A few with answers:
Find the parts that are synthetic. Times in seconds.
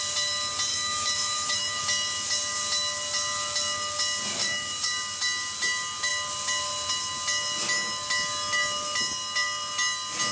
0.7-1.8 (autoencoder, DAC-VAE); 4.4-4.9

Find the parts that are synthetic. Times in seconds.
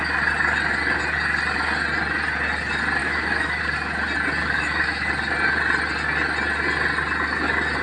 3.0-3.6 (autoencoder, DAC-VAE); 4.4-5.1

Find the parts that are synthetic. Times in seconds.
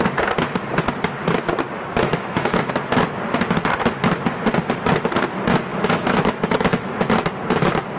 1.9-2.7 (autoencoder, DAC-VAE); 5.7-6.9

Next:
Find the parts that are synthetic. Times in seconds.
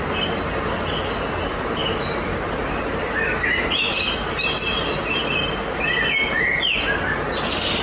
none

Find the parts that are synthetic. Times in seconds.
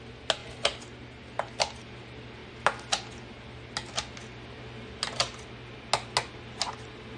none